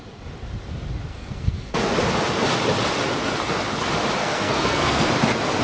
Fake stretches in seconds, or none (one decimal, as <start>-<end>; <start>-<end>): 1.1-1.9; 4.2-5.1